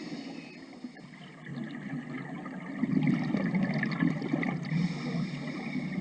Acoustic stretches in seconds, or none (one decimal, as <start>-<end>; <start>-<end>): 0.0-6.0